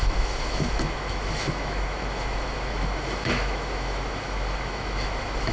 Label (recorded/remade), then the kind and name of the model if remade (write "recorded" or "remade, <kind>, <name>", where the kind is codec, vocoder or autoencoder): remade, autoencoder, DAC-VAE